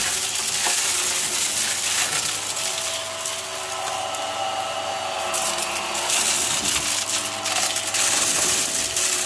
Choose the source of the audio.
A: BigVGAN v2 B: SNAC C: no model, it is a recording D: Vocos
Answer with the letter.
C